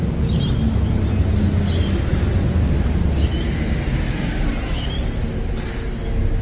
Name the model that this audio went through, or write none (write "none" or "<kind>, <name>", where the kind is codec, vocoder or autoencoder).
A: none